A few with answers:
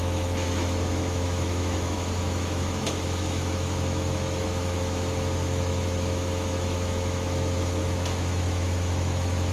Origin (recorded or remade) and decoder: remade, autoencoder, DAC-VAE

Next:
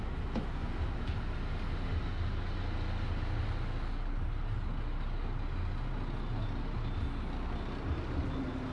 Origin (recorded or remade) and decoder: recorded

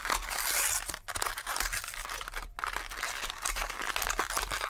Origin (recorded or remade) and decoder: recorded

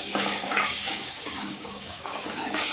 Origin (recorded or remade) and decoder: remade, codec, DAC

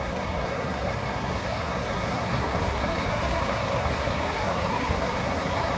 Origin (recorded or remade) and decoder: remade, codec, SNAC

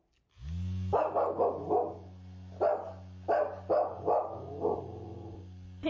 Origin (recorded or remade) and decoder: recorded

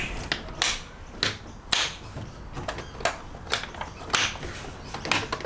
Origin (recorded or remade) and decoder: recorded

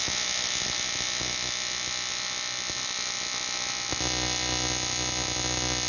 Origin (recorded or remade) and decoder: recorded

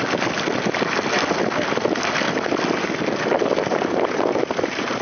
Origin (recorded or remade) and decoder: recorded